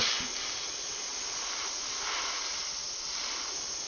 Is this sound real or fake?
real